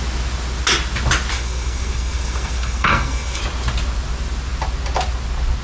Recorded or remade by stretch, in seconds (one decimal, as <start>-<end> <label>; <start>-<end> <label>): 0.0-1.3 recorded; 1.3-3.4 remade; 3.4-5.6 recorded